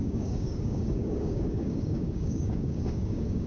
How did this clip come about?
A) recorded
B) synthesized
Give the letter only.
B